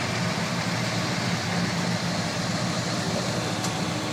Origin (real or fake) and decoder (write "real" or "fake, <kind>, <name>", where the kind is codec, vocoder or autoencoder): real